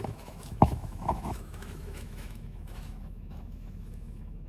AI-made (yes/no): yes